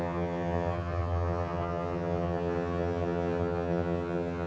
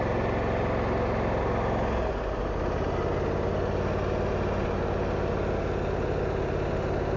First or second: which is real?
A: second